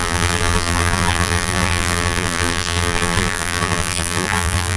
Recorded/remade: remade